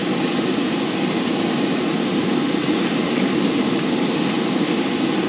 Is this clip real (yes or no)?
yes